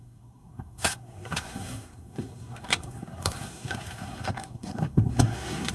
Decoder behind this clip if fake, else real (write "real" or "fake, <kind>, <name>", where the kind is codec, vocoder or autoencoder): fake, codec, SNAC